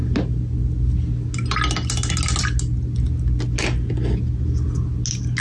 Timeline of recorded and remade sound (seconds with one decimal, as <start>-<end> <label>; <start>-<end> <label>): 0.0-5.4 recorded